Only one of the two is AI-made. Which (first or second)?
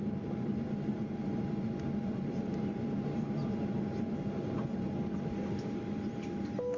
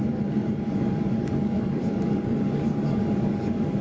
second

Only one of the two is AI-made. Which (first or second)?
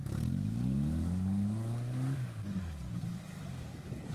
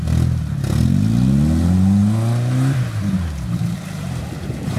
first